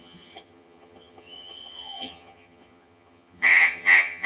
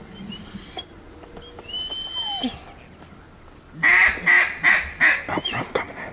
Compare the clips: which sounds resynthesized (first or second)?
first